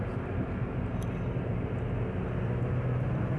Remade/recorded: remade